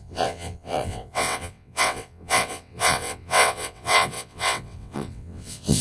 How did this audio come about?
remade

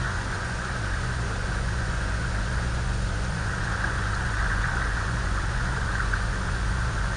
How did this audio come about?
remade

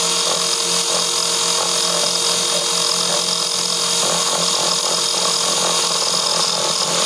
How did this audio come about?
recorded